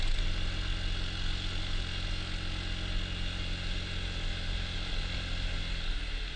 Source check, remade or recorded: recorded